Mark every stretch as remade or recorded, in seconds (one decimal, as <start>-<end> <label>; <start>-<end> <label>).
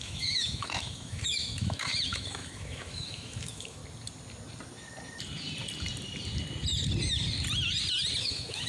0.0-3.8 remade; 3.8-8.2 recorded; 8.2-8.7 remade